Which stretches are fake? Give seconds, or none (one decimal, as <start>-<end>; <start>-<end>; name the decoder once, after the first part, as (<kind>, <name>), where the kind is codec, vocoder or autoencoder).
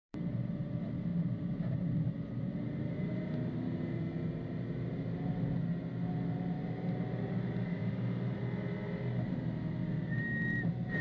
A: 0.0-0.7 (vocoder, BigVGAN v2); 1.1-3.1; 7.8-8.4